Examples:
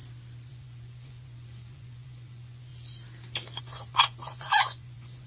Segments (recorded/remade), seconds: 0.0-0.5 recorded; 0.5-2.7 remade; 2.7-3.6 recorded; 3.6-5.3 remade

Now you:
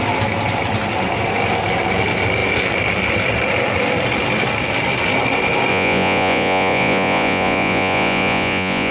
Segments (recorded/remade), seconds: 0.0-5.7 recorded; 5.7-8.9 remade

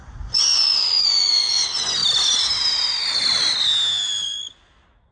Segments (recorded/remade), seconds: 0.0-2.0 remade; 2.0-5.1 recorded

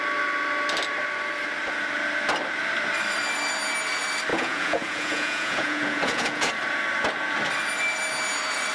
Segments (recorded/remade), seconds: 0.0-4.3 recorded; 4.3-6.5 remade; 6.5-8.7 recorded

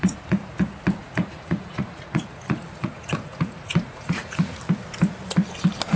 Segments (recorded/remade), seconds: 0.0-0.6 remade; 0.6-1.0 recorded; 1.0-4.6 remade; 4.6-6.0 recorded

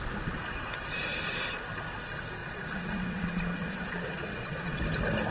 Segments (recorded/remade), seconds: 0.0-2.4 recorded; 2.4-4.8 remade; 4.8-5.3 recorded

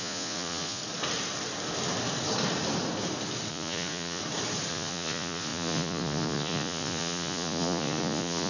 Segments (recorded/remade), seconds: 0.0-0.8 remade; 0.8-3.5 recorded; 3.5-4.2 remade; 4.2-4.7 recorded; 4.7-8.5 remade

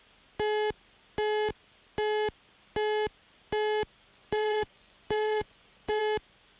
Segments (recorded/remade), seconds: 0.0-4.1 recorded; 4.1-6.0 remade; 6.0-6.6 recorded